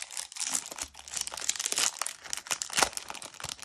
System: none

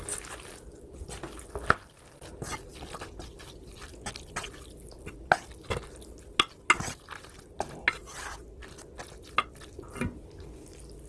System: none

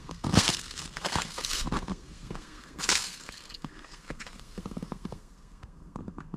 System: codec, SNAC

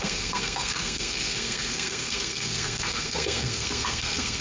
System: codec, SNAC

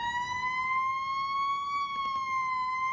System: none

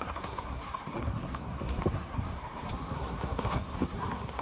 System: codec, SNAC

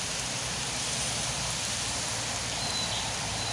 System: none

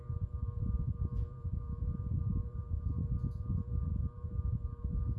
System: vocoder, Vocos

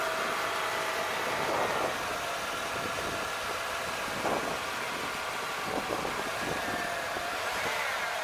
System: none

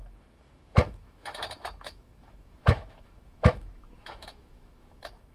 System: autoencoder, DAC-VAE